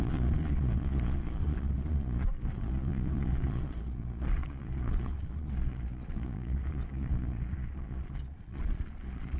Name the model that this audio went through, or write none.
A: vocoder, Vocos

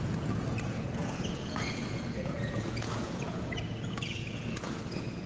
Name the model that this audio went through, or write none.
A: vocoder, Vocos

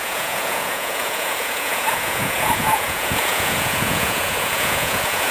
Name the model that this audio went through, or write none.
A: vocoder, Vocos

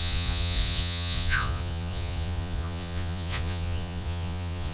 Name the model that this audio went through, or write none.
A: vocoder, Vocos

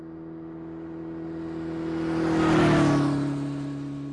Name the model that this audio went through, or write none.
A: none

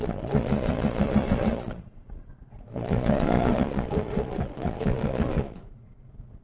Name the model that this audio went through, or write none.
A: vocoder, Vocos